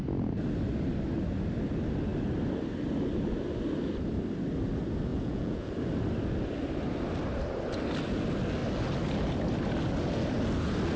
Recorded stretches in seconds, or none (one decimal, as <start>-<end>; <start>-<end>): 0.0-5.1; 5.7-11.0